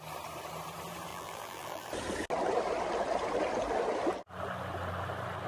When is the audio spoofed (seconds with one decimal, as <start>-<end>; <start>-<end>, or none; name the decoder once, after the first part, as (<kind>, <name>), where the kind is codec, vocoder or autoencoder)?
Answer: 1.1-1.9 (vocoder, BigVGAN v2)